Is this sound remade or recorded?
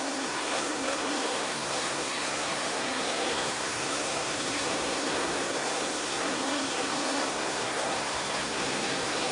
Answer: remade